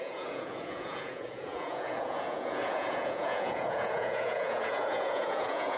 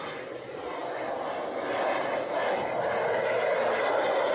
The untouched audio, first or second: second